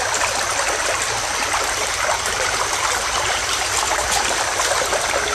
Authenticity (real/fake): fake